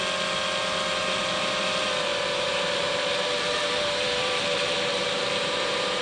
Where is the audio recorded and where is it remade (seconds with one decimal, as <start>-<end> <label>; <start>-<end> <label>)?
0.0-0.6 recorded; 0.6-1.6 remade; 1.6-2.1 recorded; 2.1-6.0 remade